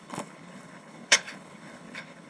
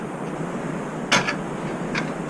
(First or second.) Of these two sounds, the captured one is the second